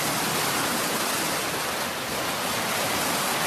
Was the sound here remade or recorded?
recorded